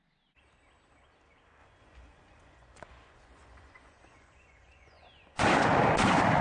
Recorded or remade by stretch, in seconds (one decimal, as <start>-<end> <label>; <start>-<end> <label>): 0.0-1.6 recorded; 1.6-5.4 remade; 5.4-6.4 recorded